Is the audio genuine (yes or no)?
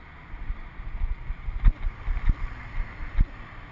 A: yes